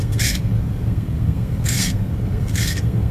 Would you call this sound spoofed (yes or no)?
yes